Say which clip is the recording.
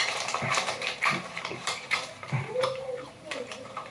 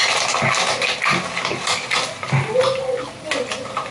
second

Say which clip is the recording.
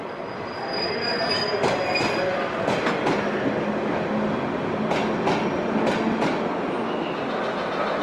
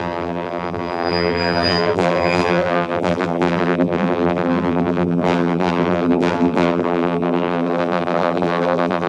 first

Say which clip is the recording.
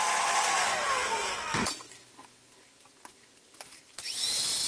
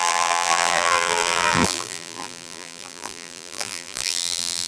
first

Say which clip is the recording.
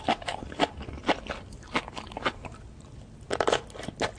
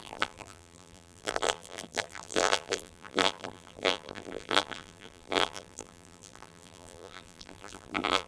first